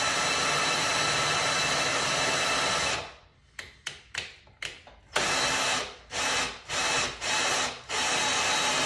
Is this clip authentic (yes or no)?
yes